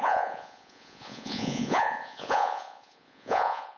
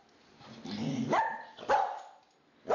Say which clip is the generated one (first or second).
first